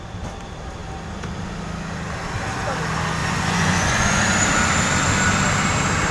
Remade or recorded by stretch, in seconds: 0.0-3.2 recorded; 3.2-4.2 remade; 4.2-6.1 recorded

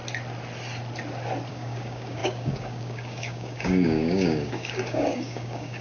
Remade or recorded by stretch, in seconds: 0.0-1.5 recorded; 1.5-5.8 remade